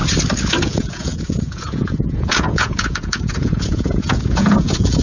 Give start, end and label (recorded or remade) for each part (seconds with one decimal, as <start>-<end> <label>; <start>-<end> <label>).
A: 0.0-0.6 recorded; 0.6-5.0 remade